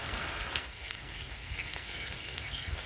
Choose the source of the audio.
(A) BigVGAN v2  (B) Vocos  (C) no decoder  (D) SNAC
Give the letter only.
D